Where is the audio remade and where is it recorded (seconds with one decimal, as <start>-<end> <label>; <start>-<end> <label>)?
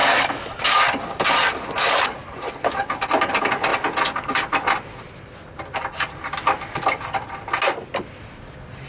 0.0-8.9 recorded